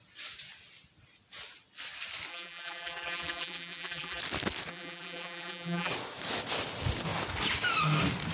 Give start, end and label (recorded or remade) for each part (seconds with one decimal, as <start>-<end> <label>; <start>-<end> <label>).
0.0-2.3 recorded; 2.3-4.2 remade; 4.2-4.7 recorded; 4.7-5.9 remade; 5.9-8.3 recorded